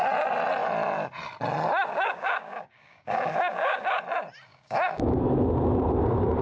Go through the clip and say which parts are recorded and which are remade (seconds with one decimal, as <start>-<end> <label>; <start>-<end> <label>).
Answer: 0.0-1.9 recorded; 1.9-4.0 remade; 4.0-4.5 recorded; 4.5-5.2 remade; 5.2-6.4 recorded